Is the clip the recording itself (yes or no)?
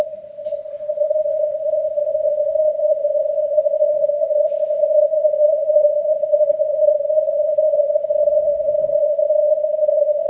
no